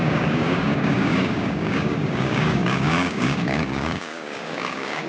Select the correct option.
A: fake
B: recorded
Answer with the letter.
A